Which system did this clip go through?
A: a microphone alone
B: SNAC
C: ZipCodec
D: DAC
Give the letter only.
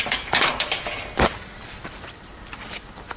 A